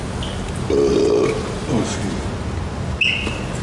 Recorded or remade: recorded